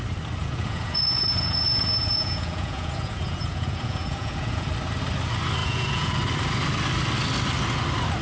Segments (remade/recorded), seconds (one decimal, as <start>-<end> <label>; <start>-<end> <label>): 0.0-0.4 recorded; 0.4-4.7 remade; 4.7-5.6 recorded; 5.6-6.1 remade; 6.1-8.2 recorded